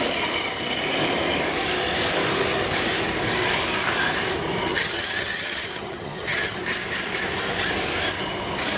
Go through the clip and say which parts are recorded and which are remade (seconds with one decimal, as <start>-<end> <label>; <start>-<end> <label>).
0.0-4.7 recorded; 4.7-6.6 remade; 6.6-8.8 recorded